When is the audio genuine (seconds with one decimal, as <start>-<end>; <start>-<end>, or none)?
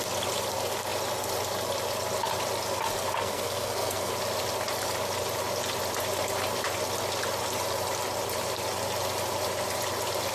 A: 0.0-3.2; 4.1-10.3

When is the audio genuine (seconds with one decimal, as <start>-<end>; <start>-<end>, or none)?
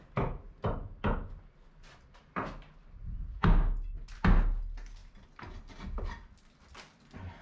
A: 0.0-7.4